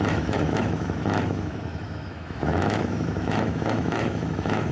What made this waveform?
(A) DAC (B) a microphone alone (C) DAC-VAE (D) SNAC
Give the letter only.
C